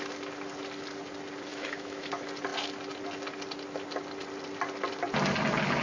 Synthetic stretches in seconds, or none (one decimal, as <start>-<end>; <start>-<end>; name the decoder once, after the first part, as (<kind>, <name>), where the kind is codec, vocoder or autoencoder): 1.5-2.1 (autoencoder, DAC-VAE)